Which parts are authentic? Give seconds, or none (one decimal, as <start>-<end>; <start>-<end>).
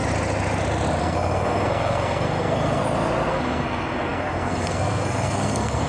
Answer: 0.0-1.0; 2.8-3.3